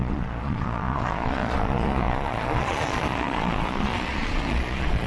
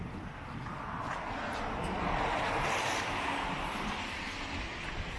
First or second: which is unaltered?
second